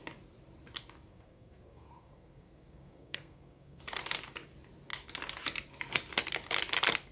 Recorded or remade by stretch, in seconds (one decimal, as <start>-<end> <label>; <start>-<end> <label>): 0.0-1.1 recorded; 1.1-3.8 remade; 3.8-7.1 recorded